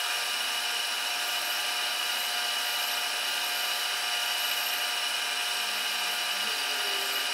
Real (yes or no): yes